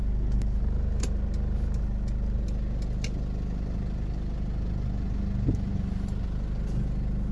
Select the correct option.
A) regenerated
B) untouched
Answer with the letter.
B